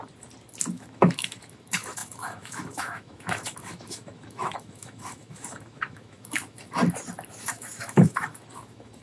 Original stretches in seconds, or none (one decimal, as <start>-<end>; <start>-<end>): 0.0-0.7; 6.8-7.3